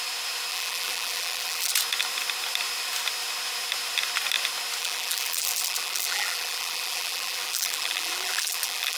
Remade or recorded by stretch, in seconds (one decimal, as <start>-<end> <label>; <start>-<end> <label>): 0.0-0.5 recorded; 0.5-1.7 remade; 1.7-4.8 recorded; 4.8-9.0 remade